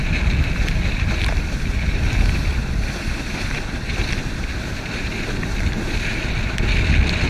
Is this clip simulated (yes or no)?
no